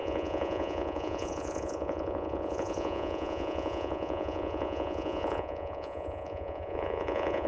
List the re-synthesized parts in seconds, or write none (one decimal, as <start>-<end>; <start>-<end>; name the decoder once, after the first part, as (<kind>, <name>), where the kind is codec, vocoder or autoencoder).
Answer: 0.0-7.5 (vocoder, Vocos)